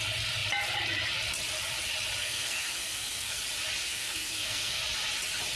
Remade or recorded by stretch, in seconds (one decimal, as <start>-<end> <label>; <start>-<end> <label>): 0.0-2.2 recorded; 2.2-3.4 remade; 3.4-3.8 recorded; 3.8-4.8 remade; 4.8-5.6 recorded